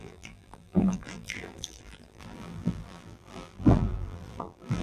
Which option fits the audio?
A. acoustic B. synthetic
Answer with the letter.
B